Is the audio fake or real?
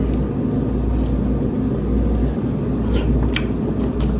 real